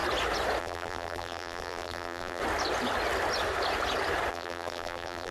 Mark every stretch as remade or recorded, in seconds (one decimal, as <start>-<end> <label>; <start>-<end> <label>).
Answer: 0.0-0.6 recorded; 0.6-2.4 remade; 2.4-4.3 recorded; 4.3-5.3 remade